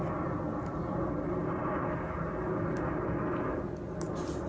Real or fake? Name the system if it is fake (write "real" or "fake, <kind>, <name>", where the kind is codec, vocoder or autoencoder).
real